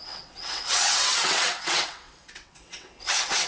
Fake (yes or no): yes